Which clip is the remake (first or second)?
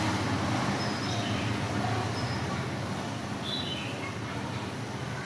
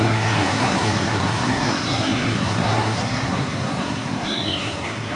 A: second